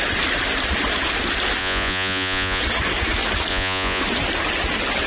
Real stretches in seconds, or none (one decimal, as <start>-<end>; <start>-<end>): 0.0-1.6; 2.6-3.5; 4.0-5.1